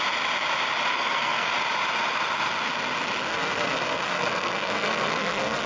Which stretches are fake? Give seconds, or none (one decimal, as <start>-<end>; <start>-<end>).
0.9-1.5; 3.3-5.7